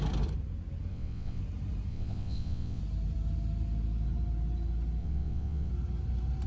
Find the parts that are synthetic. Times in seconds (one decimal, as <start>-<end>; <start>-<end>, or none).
0.9-1.4; 1.9-2.8; 5.0-5.7